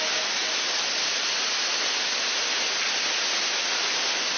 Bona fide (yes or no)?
yes